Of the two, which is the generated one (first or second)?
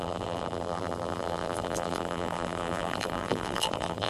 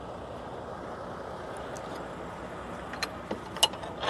first